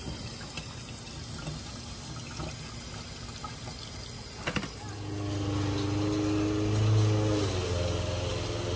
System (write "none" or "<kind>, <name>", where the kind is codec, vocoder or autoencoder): none